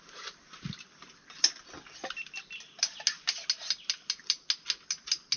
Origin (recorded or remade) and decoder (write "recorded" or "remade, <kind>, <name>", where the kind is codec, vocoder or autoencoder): recorded